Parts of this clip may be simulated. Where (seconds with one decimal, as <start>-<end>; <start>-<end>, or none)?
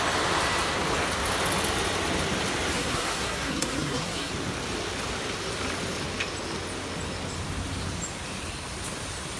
2.7-4.3